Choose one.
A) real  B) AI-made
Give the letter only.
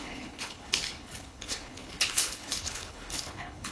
B